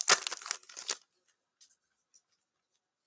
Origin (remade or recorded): recorded